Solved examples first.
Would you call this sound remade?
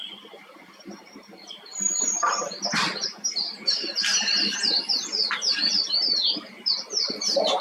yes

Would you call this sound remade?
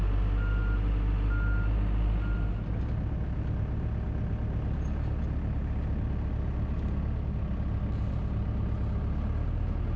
no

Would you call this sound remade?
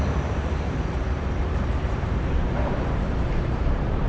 yes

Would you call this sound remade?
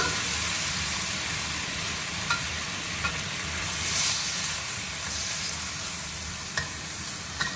yes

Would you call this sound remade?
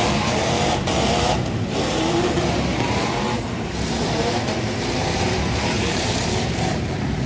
yes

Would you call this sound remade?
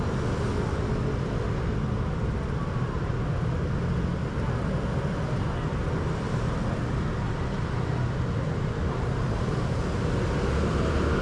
no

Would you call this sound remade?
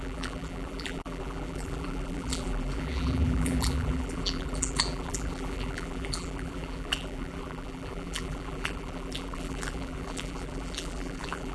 yes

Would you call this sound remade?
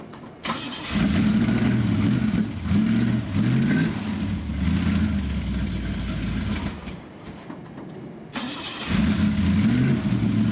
no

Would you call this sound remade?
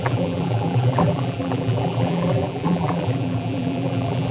yes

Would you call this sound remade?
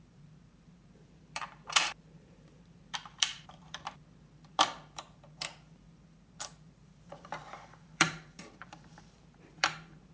yes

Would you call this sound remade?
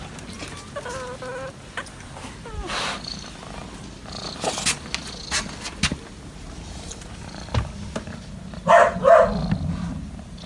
no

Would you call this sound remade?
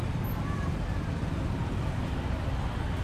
no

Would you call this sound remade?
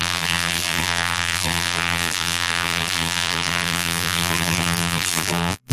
yes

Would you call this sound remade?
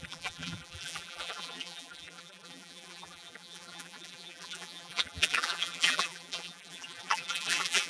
yes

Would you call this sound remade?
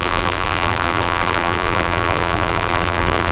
yes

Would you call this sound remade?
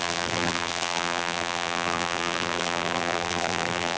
yes